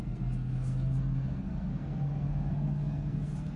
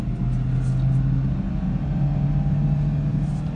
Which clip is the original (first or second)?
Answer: second